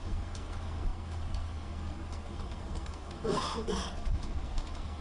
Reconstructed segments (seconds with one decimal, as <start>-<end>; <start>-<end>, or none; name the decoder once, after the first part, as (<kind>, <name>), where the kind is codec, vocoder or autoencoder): 0.0-5.0 (codec, SNAC)